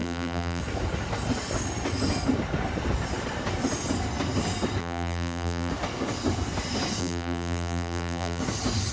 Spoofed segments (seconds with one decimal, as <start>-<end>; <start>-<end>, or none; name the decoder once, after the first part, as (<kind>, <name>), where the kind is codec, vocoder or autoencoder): 0.0-0.6 (vocoder, BigVGAN v2); 4.8-5.7; 7.0-8.4

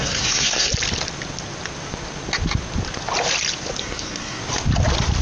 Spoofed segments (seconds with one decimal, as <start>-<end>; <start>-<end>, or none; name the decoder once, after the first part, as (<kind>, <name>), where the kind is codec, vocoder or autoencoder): 0.0-0.7 (codec, SNAC); 3.8-4.4

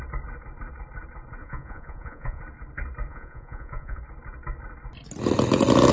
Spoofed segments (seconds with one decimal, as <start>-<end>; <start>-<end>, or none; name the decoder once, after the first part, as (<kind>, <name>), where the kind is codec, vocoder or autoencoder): 1.4-2.4 (vocoder, Vocos); 3.1-4.0

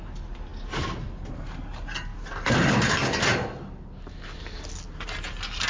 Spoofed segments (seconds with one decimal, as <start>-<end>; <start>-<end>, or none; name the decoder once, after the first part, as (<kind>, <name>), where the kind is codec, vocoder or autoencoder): none

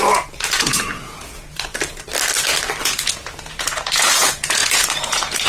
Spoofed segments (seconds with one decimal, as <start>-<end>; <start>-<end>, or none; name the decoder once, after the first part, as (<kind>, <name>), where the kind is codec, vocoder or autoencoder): 0.0-1.7 (vocoder, Vocos); 2.8-5.5